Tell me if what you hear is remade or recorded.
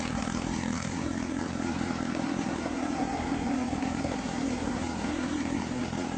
remade